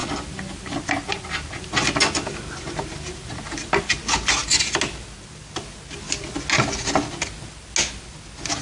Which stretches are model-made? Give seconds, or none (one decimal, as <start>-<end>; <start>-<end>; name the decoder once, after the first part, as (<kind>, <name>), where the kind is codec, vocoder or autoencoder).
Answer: none